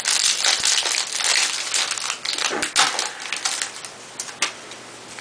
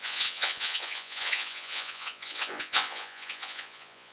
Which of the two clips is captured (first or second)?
first